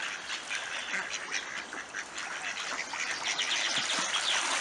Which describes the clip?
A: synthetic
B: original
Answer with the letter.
B